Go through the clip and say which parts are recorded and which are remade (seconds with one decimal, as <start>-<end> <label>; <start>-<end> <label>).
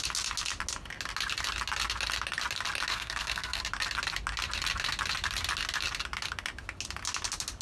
0.0-2.9 recorded; 2.9-3.6 remade; 3.6-7.6 recorded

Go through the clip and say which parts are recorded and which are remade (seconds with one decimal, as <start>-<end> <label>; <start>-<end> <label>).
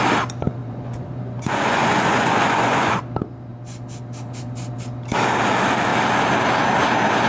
0.0-0.6 recorded; 0.6-3.0 remade; 3.0-7.3 recorded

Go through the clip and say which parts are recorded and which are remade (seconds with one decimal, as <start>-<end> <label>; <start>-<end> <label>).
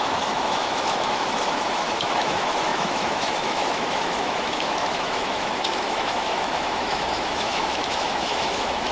0.0-8.9 remade